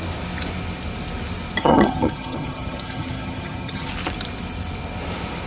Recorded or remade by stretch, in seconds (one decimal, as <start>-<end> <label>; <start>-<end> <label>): 0.0-1.6 recorded; 1.6-3.9 remade; 3.9-5.5 recorded